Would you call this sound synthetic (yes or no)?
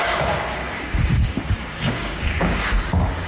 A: yes